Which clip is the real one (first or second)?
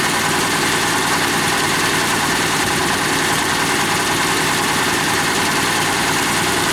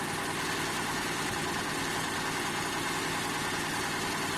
second